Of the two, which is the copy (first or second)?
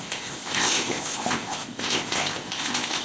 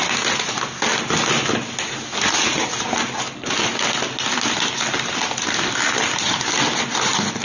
first